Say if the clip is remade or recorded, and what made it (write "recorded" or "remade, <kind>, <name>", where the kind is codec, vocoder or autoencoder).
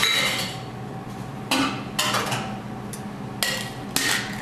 recorded